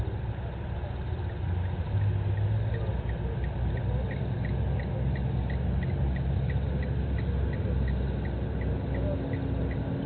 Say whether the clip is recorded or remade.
recorded